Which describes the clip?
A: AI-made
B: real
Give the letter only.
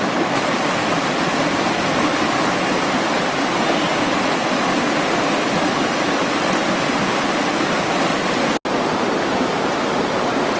B